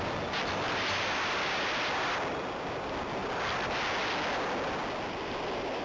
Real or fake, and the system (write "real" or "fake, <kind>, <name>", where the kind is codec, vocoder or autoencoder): real